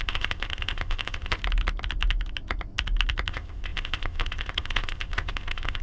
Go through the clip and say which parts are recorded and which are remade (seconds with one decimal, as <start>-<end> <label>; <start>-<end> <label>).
0.0-1.4 remade; 1.4-3.3 recorded; 3.3-5.8 remade